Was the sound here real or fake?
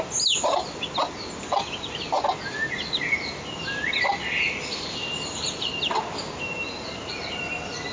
real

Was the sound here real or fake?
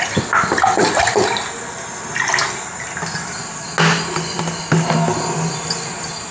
real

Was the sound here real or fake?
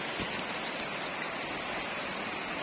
real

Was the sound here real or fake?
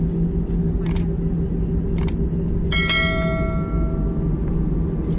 real